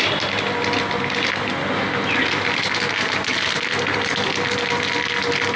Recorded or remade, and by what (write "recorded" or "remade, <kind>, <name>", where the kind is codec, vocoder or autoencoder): recorded